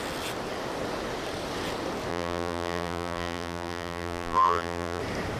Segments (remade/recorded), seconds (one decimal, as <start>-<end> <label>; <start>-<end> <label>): 0.0-2.1 recorded; 2.1-5.0 remade; 5.0-5.4 recorded